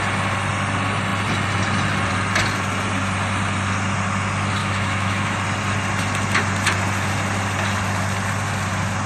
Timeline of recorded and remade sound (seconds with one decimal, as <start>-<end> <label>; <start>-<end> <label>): 0.0-4.6 recorded; 4.6-5.4 remade; 5.4-9.1 recorded